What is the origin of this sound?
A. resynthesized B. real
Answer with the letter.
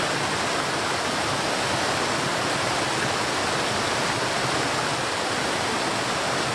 B